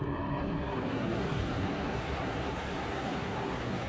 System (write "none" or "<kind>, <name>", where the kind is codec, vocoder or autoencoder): codec, SNAC